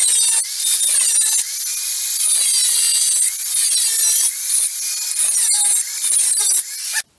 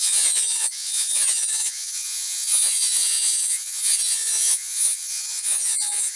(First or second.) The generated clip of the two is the second